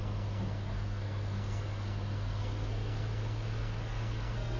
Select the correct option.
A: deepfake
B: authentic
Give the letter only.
A